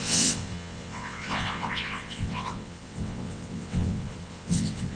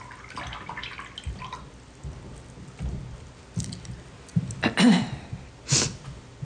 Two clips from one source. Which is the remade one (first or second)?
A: first